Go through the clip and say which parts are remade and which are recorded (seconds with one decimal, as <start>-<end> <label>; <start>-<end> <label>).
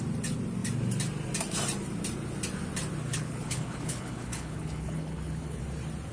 0.0-3.1 recorded; 3.1-5.6 remade; 5.6-6.1 recorded